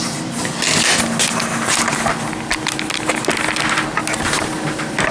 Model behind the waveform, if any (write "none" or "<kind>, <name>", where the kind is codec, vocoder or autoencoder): none